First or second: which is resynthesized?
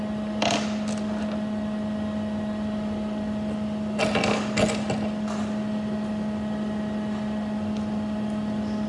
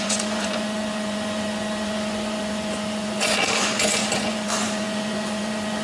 second